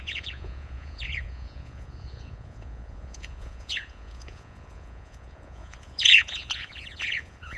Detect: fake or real fake